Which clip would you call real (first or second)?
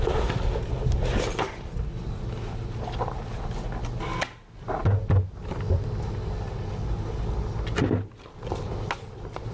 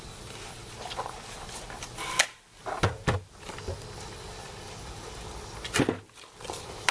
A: first